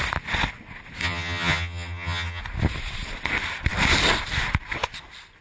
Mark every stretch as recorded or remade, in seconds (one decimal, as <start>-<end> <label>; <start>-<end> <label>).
0.0-1.0 recorded; 1.0-2.4 remade; 2.4-5.4 recorded